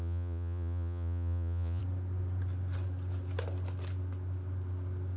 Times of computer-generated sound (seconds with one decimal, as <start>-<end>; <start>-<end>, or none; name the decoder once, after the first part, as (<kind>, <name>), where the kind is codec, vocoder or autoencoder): 0.0-1.8 (vocoder, Vocos)